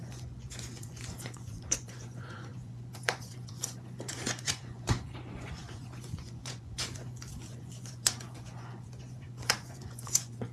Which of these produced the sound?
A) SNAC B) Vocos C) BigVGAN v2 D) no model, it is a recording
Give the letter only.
B